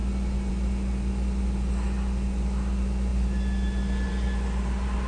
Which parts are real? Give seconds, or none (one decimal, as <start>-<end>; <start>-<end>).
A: 0.0-5.1